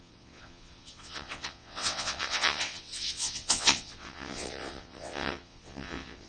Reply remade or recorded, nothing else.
remade